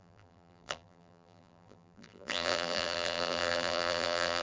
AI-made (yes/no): yes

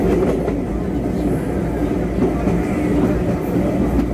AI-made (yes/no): no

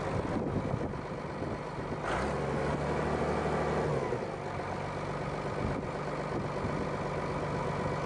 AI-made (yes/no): no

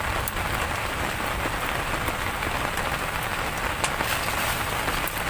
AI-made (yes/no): no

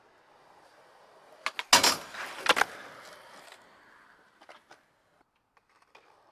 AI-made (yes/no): no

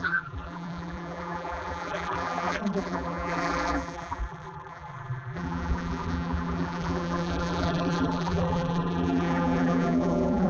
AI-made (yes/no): yes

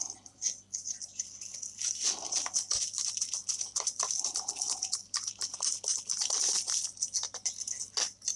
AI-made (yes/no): no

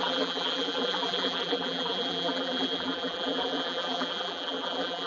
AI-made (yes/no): yes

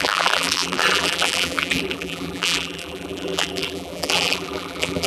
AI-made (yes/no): yes